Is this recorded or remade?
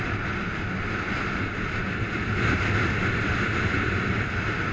recorded